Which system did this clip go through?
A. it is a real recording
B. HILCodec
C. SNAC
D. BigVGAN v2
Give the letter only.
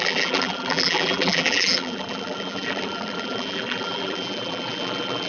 D